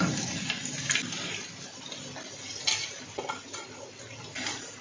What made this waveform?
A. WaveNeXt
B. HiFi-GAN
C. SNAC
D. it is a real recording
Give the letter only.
D